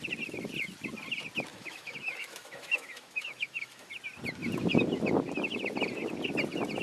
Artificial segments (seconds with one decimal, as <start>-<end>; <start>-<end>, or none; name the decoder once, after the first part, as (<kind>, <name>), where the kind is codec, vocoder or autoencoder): 1.5-3.9 (autoencoder, DAC-VAE)